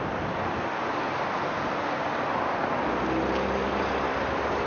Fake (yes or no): no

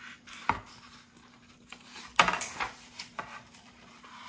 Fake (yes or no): yes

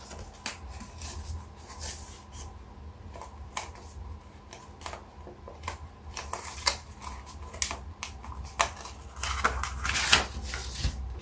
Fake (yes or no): no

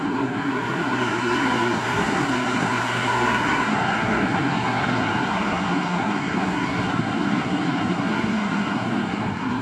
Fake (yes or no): yes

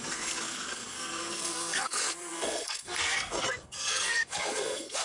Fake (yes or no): yes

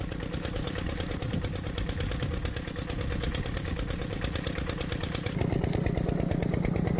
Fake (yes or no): no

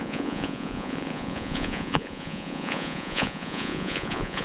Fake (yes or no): yes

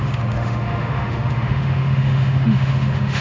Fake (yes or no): yes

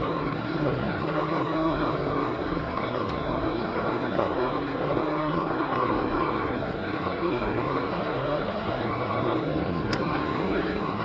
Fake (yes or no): yes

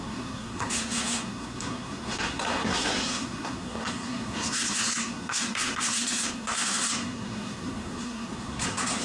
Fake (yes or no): yes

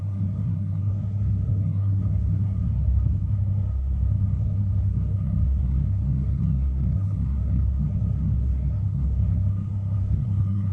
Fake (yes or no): yes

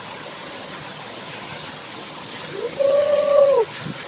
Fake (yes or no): yes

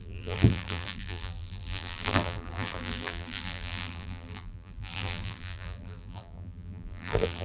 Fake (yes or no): yes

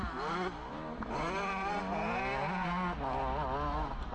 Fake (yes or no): no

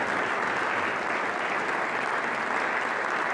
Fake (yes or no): no